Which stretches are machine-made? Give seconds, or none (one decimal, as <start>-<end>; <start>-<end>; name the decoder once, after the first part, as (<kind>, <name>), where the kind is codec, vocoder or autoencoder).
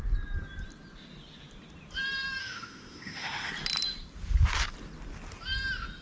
2.4-3.5 (autoencoder, DAC-VAE)